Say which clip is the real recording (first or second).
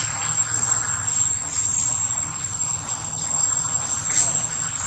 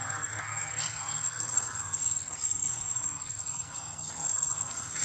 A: first